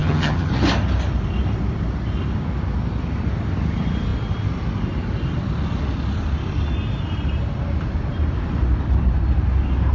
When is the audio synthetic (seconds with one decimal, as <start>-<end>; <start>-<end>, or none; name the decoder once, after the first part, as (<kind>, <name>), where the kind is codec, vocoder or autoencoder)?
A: 0.0-0.5 (vocoder, HiFi-GAN)